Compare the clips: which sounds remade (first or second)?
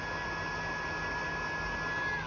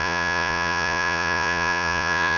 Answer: second